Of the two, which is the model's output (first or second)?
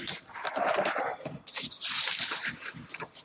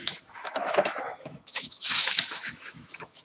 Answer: second